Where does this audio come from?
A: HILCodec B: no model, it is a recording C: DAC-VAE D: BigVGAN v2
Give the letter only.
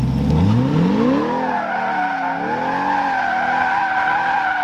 B